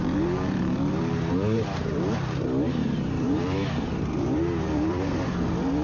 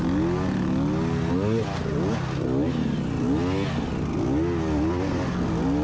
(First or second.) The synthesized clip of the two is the first